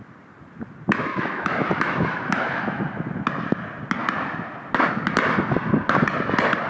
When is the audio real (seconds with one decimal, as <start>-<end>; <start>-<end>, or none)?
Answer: 0.0-1.1; 2.8-6.7